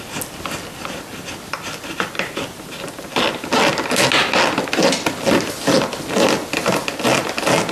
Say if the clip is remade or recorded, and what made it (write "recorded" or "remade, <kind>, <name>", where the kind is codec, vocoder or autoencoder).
recorded